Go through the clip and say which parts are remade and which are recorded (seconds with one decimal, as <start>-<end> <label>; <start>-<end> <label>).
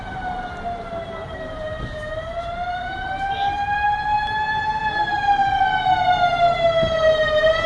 0.0-5.4 remade; 5.4-6.0 recorded; 6.0-7.7 remade